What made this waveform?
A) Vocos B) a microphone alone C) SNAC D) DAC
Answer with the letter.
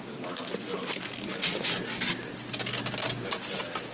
B